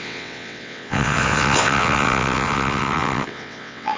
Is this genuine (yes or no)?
no